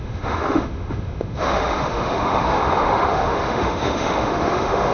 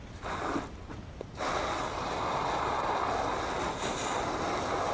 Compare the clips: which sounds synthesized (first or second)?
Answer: first